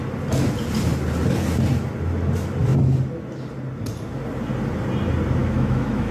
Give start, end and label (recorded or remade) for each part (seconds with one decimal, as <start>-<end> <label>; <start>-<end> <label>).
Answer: 0.0-5.4 recorded; 5.4-6.1 remade

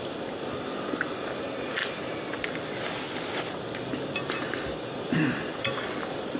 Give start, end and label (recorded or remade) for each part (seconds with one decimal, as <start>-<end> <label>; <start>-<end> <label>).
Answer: 0.0-6.4 recorded

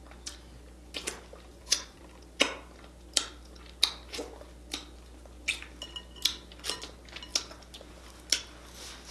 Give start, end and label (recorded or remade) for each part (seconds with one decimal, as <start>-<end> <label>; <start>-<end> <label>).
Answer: 0.0-1.5 recorded; 1.5-2.0 remade; 2.0-9.1 recorded